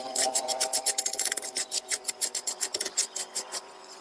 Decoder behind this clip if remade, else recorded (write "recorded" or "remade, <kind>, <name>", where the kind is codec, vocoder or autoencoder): remade, vocoder, Vocos